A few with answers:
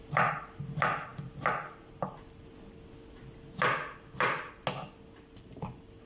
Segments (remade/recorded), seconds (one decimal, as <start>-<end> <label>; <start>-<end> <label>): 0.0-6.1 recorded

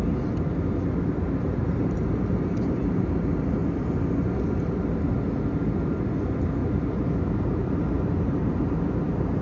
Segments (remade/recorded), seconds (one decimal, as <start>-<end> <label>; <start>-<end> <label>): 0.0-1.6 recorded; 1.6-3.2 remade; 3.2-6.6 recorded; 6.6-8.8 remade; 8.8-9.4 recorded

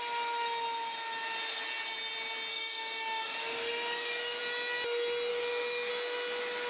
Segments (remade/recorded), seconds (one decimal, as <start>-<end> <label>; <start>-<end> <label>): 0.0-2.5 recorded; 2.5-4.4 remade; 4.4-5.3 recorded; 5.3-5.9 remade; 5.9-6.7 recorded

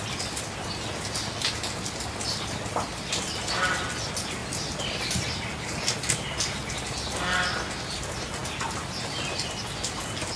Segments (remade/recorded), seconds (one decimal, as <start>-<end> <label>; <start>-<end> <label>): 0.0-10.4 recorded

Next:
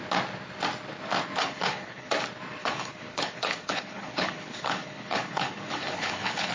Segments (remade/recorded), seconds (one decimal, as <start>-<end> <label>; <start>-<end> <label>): 0.0-1.4 recorded; 1.4-2.1 remade; 2.1-2.6 recorded; 2.6-6.5 remade

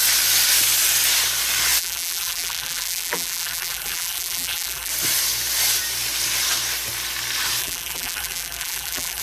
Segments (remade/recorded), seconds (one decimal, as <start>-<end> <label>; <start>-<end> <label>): 0.0-1.8 recorded; 1.8-4.9 remade; 4.9-7.6 recorded; 7.6-9.2 remade

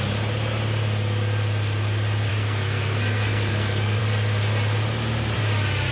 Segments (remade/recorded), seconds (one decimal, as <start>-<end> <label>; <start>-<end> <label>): 0.0-2.3 recorded; 2.3-4.0 remade; 4.0-5.9 recorded